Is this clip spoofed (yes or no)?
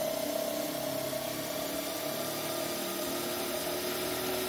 no